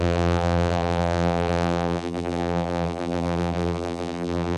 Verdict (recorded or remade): remade